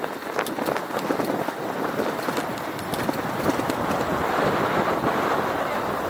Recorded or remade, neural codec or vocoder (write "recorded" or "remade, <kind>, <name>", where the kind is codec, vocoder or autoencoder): recorded